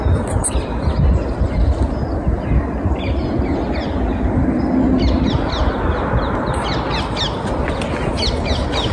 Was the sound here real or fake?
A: real